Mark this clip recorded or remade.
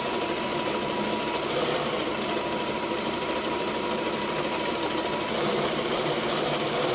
remade